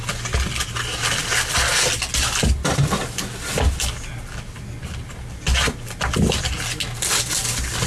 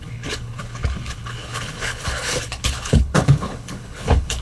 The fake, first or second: second